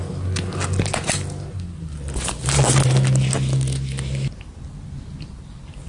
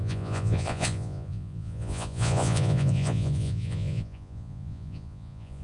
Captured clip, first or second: first